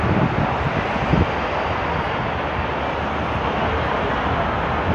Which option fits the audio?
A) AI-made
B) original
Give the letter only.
B